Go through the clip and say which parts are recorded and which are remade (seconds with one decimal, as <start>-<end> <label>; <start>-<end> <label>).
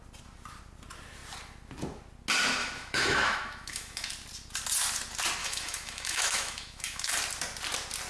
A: 0.0-2.6 recorded; 2.6-4.1 remade; 4.1-5.4 recorded; 5.4-7.1 remade; 7.1-8.1 recorded